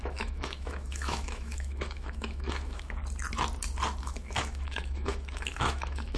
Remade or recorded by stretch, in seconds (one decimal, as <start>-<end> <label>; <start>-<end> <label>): 0.0-3.0 remade; 3.0-4.0 recorded; 4.0-6.2 remade